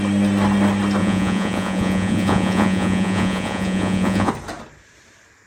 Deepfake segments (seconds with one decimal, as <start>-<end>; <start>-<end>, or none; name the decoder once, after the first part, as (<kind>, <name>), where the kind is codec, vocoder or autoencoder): 1.0-4.3 (vocoder, Vocos)